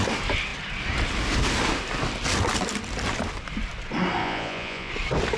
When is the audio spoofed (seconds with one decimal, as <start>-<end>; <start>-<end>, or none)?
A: 4.2-4.9